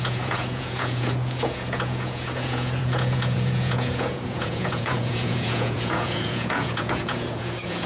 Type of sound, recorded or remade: remade